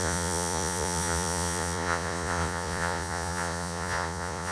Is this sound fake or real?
fake